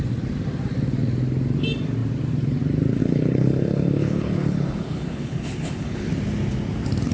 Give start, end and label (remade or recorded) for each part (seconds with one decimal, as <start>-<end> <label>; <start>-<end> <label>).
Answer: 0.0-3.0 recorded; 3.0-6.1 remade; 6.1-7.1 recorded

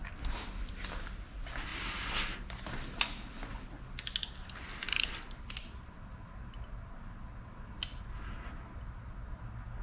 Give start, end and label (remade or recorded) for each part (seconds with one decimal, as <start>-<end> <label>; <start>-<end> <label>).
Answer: 0.0-9.8 recorded

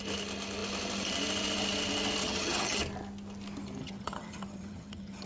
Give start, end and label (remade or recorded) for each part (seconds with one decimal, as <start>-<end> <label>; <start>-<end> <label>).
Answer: 0.0-2.2 recorded; 2.2-2.8 remade; 2.8-3.8 recorded; 3.8-5.3 remade

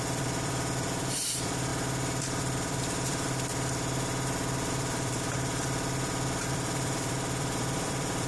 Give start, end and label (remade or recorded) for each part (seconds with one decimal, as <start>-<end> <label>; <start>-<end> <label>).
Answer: 0.0-1.7 remade; 1.7-2.2 recorded; 2.2-3.5 remade; 3.5-4.7 recorded; 4.7-8.3 remade